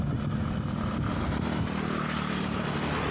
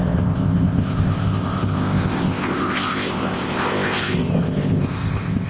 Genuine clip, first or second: first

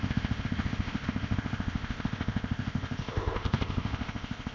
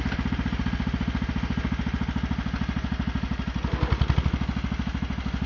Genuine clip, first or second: second